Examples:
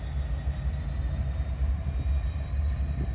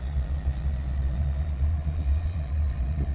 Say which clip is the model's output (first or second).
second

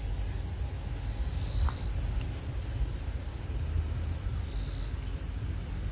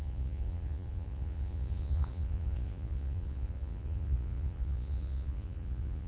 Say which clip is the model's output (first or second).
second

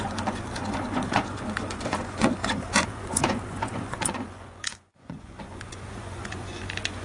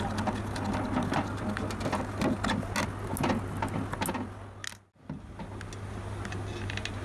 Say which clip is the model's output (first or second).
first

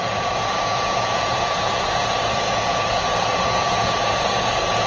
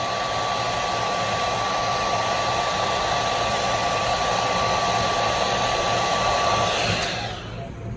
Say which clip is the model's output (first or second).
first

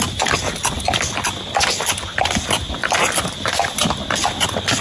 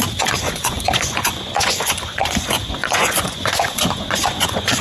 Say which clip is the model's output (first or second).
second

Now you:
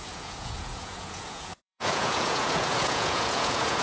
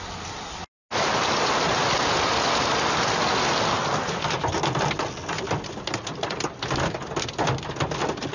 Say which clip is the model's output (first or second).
first